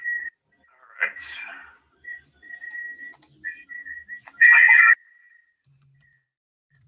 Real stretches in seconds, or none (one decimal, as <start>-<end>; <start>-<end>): 2.8-5.5